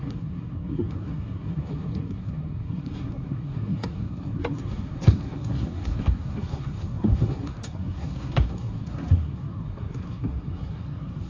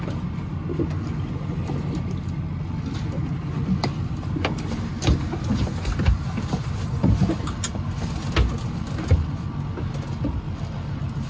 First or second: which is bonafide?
second